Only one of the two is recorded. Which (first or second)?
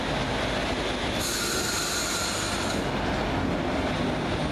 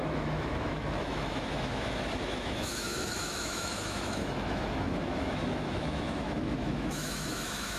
first